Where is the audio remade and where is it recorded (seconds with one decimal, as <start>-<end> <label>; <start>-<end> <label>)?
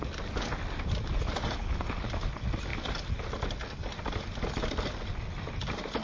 0.0-6.0 recorded